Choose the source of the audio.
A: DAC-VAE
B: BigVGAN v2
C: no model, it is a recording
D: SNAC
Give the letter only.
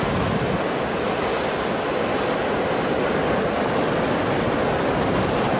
C